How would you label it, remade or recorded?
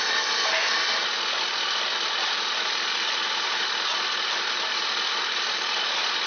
recorded